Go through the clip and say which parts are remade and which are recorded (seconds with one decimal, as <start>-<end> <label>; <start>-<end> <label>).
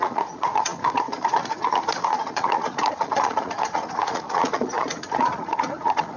0.0-6.2 remade